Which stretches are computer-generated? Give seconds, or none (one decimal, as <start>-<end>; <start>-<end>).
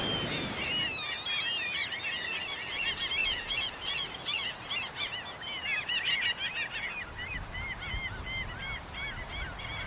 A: 3.2-4.5